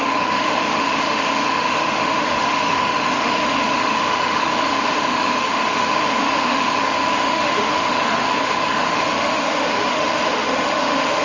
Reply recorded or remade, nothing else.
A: remade